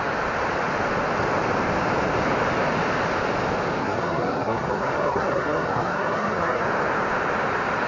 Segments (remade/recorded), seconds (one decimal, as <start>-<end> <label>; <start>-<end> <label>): 0.0-3.8 recorded; 3.8-6.6 remade; 6.6-7.9 recorded